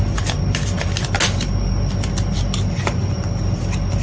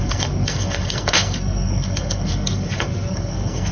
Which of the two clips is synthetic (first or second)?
second